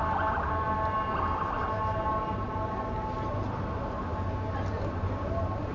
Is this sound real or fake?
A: real